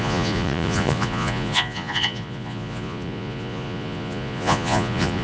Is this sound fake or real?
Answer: fake